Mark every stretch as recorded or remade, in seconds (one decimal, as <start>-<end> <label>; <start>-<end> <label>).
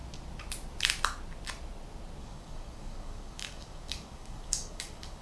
0.0-2.2 recorded; 2.2-5.2 remade